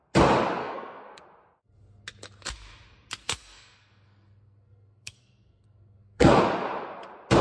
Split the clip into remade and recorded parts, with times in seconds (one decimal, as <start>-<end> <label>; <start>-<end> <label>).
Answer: 0.0-0.6 recorded; 0.6-1.2 remade; 1.2-3.2 recorded; 3.2-6.4 remade; 6.4-7.4 recorded